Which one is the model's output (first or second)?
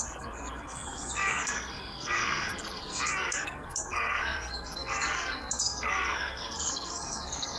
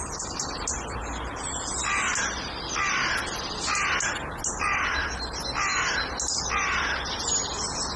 first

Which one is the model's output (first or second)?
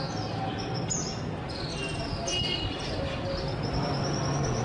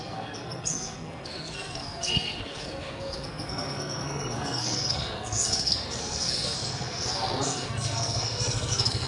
second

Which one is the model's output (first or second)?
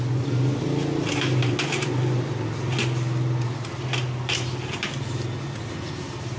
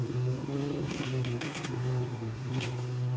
second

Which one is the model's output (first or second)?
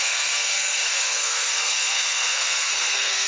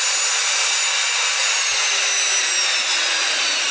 first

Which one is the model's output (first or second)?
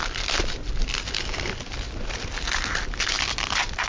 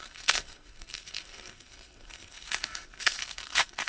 second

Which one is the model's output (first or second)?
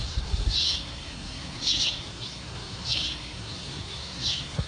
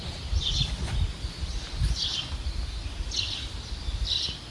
first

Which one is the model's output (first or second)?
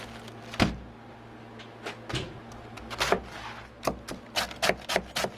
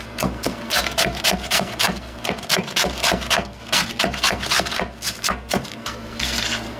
second